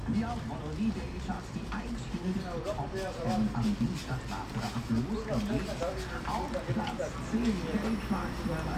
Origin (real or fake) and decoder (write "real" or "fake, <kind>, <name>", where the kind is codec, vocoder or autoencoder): real